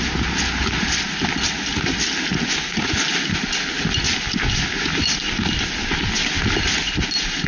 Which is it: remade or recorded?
recorded